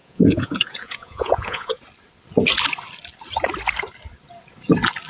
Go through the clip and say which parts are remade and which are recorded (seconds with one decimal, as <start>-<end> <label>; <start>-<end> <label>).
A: 0.0-1.8 remade; 1.8-5.1 recorded

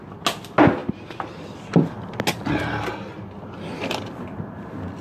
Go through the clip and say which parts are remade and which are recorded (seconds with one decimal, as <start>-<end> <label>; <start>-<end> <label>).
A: 0.0-5.0 recorded

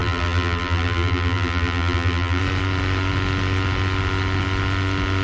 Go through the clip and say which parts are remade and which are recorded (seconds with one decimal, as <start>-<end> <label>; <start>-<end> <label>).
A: 0.0-2.4 remade; 2.4-5.2 recorded

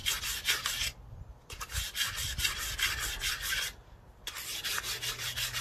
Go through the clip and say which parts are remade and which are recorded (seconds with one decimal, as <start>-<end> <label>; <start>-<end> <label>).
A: 0.0-5.6 recorded

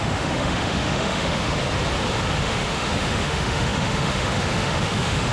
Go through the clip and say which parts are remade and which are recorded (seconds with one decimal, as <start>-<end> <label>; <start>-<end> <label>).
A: 0.0-1.6 remade; 1.6-2.4 recorded; 2.4-5.3 remade

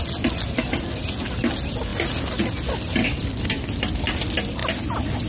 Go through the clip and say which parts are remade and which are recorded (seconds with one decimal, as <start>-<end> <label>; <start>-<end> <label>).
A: 0.0-5.3 recorded

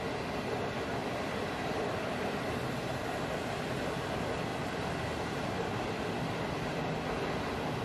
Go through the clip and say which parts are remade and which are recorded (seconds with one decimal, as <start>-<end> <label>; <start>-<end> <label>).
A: 0.0-1.0 recorded; 1.0-3.5 remade; 3.5-4.5 recorded; 4.5-6.5 remade; 6.5-7.8 recorded

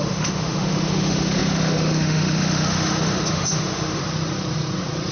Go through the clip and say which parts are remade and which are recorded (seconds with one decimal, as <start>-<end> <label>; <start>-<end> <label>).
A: 0.0-4.0 remade; 4.0-5.1 recorded